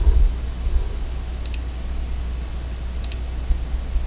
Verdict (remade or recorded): recorded